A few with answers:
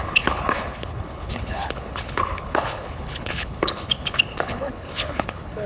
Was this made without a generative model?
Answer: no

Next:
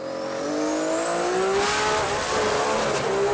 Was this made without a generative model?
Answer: yes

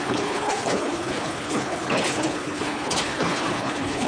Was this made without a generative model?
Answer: no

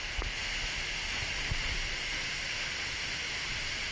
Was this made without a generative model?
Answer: yes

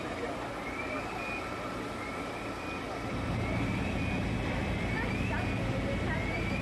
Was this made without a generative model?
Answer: yes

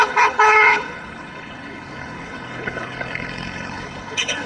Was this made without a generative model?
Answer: no